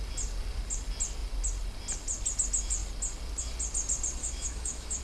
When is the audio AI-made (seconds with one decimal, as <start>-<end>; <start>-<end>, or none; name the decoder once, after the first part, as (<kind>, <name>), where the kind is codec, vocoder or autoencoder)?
4.2-5.0 (autoencoder, DAC-VAE)